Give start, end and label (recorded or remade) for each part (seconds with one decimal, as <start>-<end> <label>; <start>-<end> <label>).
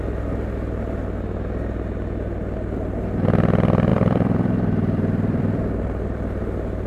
0.0-3.9 recorded; 3.9-6.4 remade; 6.4-6.9 recorded